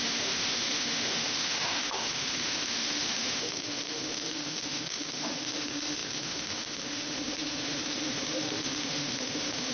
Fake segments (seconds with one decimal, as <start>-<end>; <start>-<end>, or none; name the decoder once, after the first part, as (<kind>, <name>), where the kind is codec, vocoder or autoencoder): 0.0-9.7 (autoencoder, DAC-VAE)